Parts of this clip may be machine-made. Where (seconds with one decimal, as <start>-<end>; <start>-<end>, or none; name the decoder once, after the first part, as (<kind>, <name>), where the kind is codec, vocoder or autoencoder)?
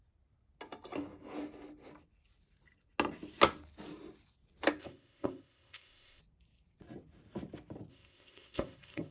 4.8-6.2 (codec, ZipCodec); 7.9-9.1